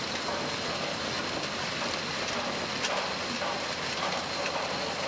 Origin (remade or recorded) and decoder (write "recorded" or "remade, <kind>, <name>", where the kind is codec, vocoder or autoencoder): remade, vocoder, BigVGAN v2